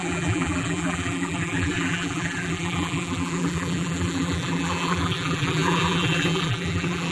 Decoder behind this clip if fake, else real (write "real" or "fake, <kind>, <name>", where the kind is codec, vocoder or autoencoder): fake, vocoder, BigVGAN v2